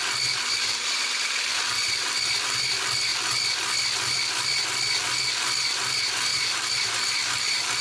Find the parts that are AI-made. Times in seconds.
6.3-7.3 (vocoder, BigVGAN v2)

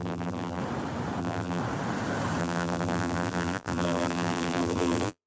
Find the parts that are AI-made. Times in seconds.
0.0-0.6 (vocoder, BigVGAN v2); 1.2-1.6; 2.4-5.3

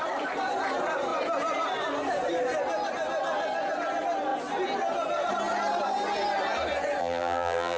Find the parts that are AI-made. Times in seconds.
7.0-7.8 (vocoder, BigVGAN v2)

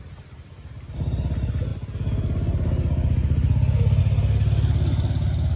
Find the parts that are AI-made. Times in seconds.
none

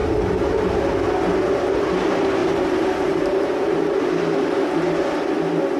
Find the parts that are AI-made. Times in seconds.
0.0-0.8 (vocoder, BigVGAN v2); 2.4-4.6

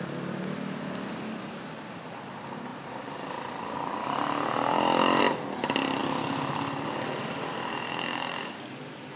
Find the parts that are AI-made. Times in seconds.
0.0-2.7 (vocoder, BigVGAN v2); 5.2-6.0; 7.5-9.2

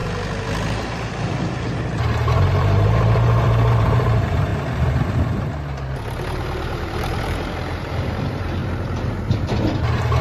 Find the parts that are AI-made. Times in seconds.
0.7-4.5 (vocoder, BigVGAN v2); 6.2-8.6; 9.7-10.2